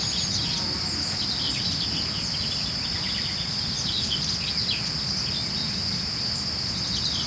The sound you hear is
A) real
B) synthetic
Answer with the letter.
A